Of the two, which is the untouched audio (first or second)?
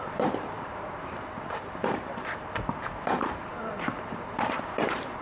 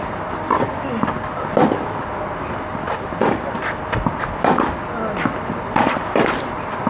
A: second